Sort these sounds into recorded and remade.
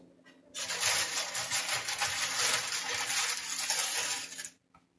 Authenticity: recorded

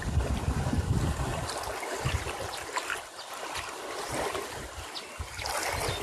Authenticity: recorded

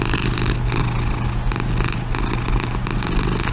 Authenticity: recorded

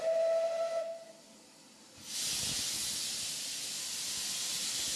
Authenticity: recorded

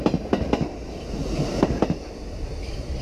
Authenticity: recorded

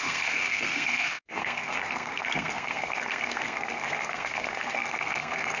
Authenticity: remade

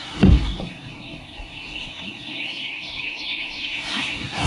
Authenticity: remade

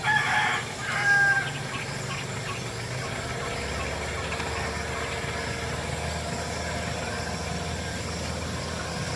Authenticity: recorded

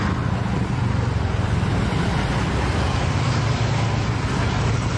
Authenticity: recorded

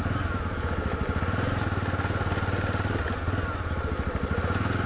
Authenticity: recorded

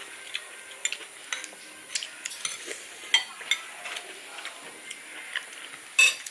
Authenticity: recorded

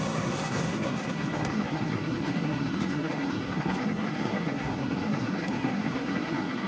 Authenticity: remade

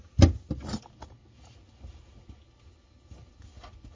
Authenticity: recorded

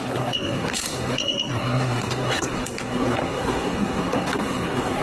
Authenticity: remade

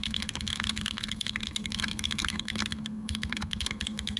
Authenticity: remade